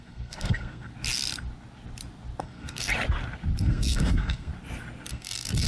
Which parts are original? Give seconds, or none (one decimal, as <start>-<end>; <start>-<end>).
0.9-2.4; 2.9-3.6; 4.5-5.1

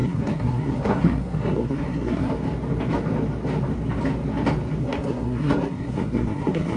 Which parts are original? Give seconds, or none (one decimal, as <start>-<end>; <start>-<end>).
2.3-4.8

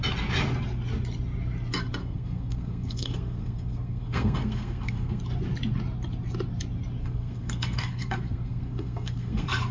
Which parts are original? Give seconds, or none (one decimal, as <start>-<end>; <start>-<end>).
0.0-2.0; 5.2-7.0

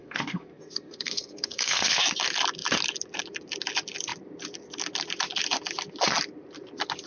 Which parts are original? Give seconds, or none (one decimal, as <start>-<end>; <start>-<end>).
2.0-7.1

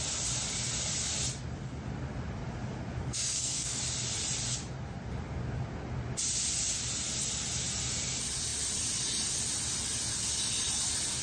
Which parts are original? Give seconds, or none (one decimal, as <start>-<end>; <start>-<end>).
0.0-3.0; 3.8-11.2

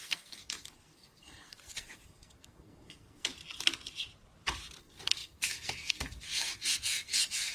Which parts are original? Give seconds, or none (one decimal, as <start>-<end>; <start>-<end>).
3.4-4.8

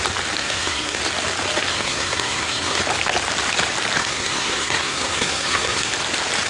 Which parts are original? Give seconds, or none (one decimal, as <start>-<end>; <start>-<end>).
0.0-0.4; 1.0-1.7; 2.8-4.0; 5.9-6.5

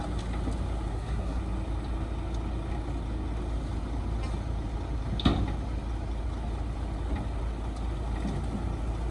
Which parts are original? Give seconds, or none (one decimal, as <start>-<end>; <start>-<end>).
0.0-0.9; 1.4-9.1